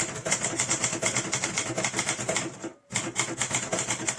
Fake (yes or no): no